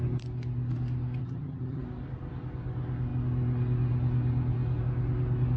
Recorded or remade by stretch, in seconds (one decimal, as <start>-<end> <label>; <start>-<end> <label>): 0.0-1.2 recorded; 1.2-1.8 remade; 1.8-5.6 recorded